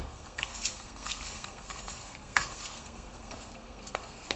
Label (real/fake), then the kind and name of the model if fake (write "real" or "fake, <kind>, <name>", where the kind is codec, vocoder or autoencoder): fake, codec, SNAC